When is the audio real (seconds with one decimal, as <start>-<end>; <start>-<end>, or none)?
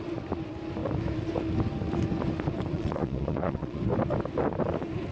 0.0-2.7; 3.8-5.1